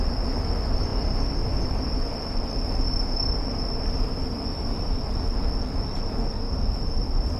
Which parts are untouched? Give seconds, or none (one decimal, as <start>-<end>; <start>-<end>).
0.0-7.4